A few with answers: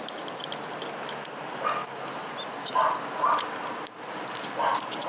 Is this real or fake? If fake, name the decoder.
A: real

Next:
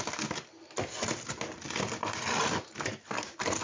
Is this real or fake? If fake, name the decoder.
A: real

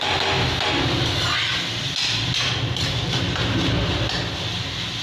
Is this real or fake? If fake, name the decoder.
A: real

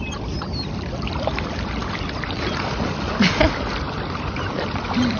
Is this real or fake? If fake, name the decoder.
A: fake, vocoder, BigVGAN v2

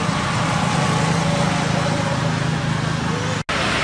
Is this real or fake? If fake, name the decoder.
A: real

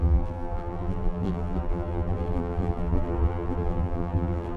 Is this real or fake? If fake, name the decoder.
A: fake, vocoder, BigVGAN v2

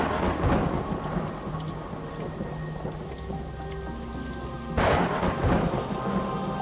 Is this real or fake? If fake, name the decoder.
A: real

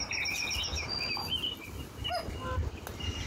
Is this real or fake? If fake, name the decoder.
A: real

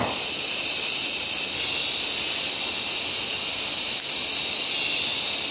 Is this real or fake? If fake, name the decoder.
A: real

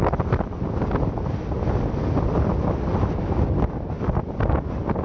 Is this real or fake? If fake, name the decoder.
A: real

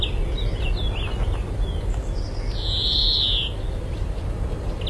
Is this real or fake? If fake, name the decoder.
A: real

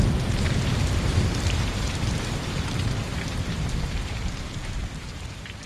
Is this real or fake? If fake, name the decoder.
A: fake, vocoder, BigVGAN v2